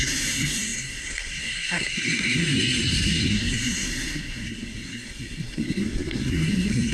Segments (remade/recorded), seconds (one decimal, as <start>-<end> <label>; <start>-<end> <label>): 0.0-6.9 remade